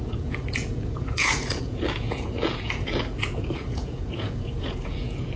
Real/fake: fake